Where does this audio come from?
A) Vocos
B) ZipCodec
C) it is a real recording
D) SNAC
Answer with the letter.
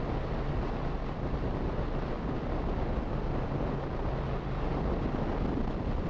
C